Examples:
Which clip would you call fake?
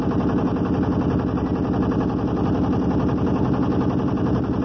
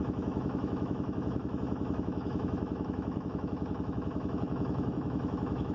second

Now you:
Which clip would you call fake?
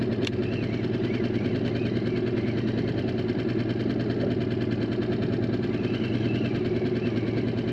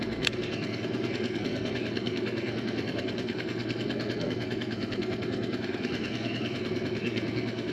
second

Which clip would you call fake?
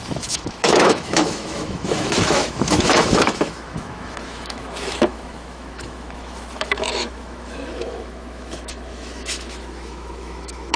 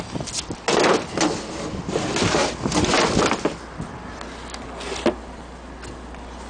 first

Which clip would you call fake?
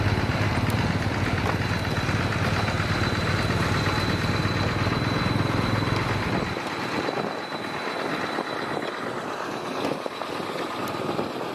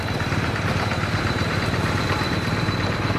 second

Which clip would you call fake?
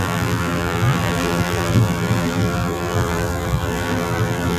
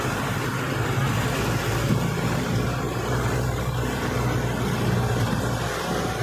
first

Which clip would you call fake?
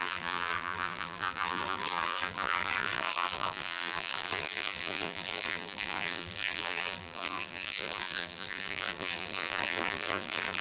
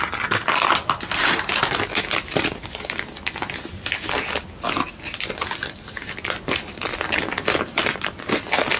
first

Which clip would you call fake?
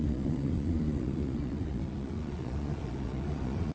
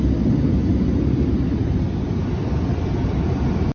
first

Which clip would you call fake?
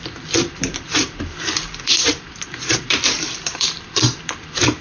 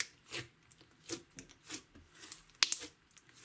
first